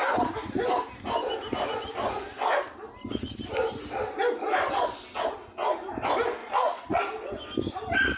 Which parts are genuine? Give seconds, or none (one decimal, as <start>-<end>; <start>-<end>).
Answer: 0.0-6.4; 7.0-8.2